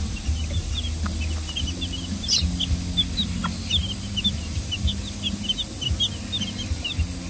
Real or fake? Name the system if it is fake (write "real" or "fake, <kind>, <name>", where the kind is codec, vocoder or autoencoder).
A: real